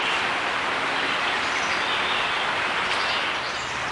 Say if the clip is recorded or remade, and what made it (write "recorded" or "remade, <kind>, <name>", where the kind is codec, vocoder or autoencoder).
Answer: recorded